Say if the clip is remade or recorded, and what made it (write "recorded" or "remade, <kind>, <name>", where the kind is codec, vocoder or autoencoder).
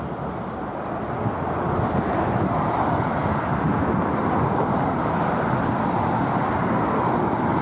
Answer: recorded